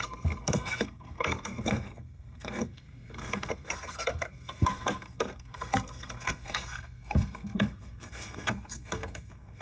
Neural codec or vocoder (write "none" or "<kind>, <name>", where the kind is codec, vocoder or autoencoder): codec, SNAC